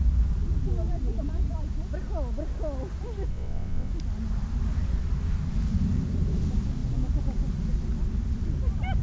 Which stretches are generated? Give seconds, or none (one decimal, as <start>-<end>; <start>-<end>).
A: 3.3-3.9